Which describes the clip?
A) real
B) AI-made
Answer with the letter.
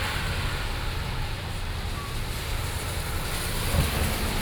A